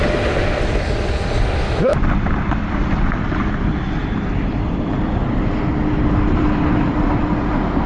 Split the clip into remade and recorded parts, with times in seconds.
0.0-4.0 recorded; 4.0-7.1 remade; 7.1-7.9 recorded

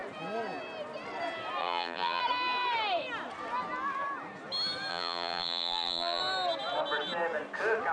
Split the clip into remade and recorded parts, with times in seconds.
0.0-1.6 recorded; 1.6-2.2 remade; 2.2-4.9 recorded; 4.9-6.2 remade; 6.2-7.9 recorded

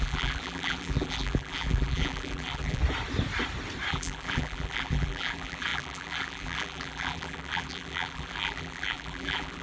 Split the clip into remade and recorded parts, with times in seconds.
0.0-2.8 remade; 2.8-3.9 recorded; 3.9-9.6 remade

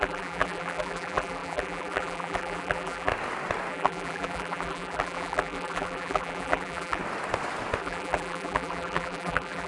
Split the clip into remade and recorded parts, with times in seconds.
0.0-3.1 remade; 3.1-3.7 recorded; 3.7-7.0 remade; 7.0-7.8 recorded; 7.8-9.7 remade

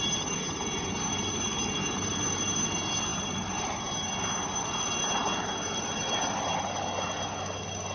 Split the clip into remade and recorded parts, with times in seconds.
0.0-3.1 recorded; 3.1-3.8 remade; 3.8-7.9 recorded

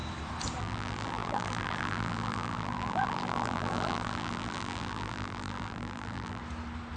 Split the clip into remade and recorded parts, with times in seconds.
0.0-0.6 recorded; 0.6-6.4 remade; 6.4-7.0 recorded

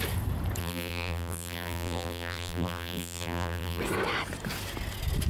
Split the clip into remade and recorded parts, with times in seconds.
0.0-0.6 recorded; 0.6-3.8 remade; 3.8-5.3 recorded

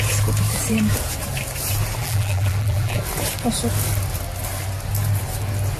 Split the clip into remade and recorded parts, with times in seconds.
0.0-2.0 recorded; 2.0-3.0 remade; 3.0-5.8 recorded